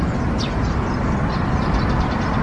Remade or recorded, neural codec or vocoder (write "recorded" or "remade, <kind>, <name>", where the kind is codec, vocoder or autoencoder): recorded